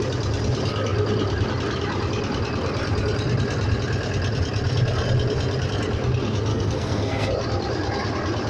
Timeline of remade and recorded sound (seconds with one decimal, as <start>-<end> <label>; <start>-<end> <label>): 0.0-6.5 recorded; 6.5-7.3 remade; 7.3-8.5 recorded